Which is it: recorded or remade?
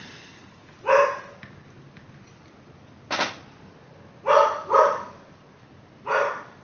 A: recorded